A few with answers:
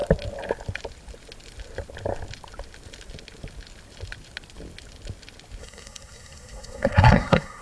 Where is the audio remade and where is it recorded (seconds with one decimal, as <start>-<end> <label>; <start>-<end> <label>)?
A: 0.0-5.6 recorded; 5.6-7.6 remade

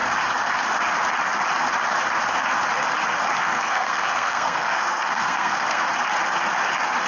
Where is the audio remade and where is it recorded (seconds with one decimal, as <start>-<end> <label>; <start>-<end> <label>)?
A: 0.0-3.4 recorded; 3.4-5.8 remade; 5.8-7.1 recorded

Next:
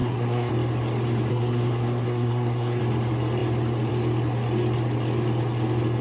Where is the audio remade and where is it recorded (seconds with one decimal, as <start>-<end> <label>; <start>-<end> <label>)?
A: 0.0-0.5 remade; 0.5-1.3 recorded; 1.3-2.8 remade; 2.8-6.0 recorded

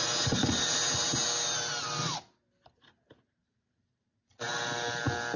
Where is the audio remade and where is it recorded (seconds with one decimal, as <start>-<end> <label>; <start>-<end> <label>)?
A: 0.0-3.4 recorded; 3.4-4.6 remade; 4.6-5.4 recorded

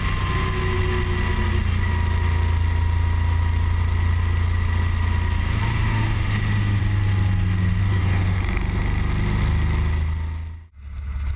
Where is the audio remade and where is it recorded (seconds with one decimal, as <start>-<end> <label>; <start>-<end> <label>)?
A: 0.0-5.7 recorded; 5.7-6.8 remade; 6.8-7.8 recorded; 7.8-8.4 remade; 8.4-11.4 recorded

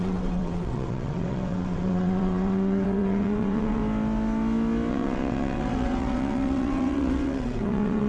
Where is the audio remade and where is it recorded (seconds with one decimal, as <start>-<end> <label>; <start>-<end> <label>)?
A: 0.0-3.8 remade; 3.8-4.9 recorded; 4.9-8.1 remade